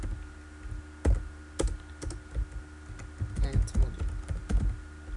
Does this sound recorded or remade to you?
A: recorded